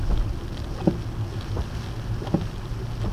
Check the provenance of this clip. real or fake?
real